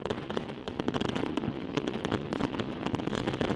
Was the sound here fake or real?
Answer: fake